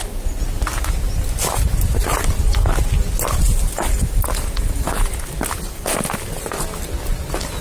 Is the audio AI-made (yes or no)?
no